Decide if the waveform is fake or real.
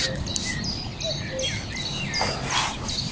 real